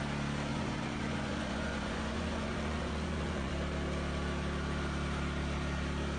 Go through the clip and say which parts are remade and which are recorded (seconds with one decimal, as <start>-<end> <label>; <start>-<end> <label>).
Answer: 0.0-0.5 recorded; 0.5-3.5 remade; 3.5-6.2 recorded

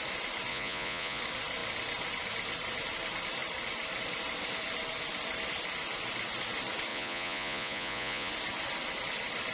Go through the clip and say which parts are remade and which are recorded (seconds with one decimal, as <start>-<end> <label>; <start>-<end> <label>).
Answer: 0.0-0.5 recorded; 0.5-1.2 remade; 1.2-6.9 recorded; 6.9-8.3 remade; 8.3-9.5 recorded

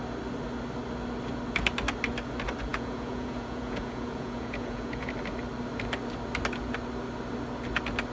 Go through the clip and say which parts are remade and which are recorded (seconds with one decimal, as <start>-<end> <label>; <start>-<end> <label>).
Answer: 0.0-2.7 recorded; 2.7-5.1 remade; 5.1-8.1 recorded

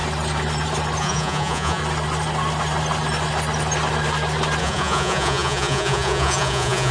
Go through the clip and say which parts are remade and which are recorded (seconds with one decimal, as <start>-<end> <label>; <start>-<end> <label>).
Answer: 0.0-1.0 recorded; 1.0-1.8 remade; 1.8-4.6 recorded; 4.6-6.9 remade

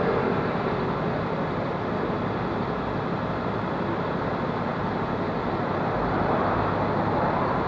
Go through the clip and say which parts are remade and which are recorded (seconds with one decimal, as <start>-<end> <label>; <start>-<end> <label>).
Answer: 0.0-7.7 recorded

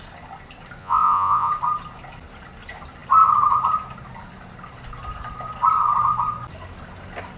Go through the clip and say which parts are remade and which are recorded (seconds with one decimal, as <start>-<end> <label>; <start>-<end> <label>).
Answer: 0.0-0.8 recorded; 0.8-1.5 remade; 1.5-7.4 recorded

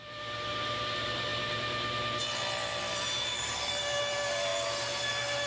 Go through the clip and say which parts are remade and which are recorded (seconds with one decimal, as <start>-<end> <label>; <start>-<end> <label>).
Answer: 0.0-5.5 recorded

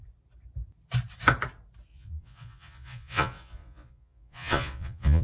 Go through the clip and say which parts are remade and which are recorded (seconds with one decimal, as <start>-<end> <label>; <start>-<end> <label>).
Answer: 0.0-1.9 recorded; 1.9-5.2 remade